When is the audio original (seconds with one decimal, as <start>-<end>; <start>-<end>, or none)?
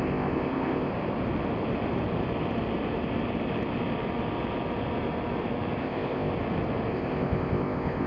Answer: 0.9-5.8; 6.3-6.9